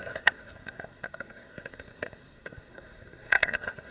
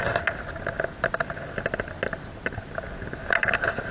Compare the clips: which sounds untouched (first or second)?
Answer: second